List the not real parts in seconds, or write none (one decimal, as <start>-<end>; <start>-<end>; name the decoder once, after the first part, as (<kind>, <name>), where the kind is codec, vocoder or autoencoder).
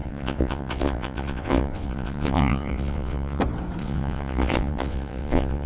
0.0-3.4 (vocoder, WaveNeXt); 3.8-5.7